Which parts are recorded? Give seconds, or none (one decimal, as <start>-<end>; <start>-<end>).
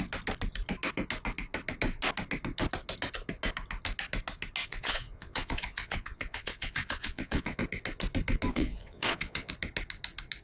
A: 0.0-4.6; 7.6-8.5; 9.5-10.4